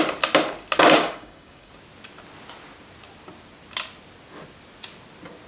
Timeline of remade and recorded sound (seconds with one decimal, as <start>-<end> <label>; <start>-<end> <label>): 0.0-1.0 recorded; 1.0-1.7 remade; 1.7-5.5 recorded